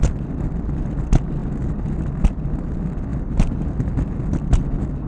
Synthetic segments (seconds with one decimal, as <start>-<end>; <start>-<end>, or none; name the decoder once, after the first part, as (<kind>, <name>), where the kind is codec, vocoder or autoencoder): none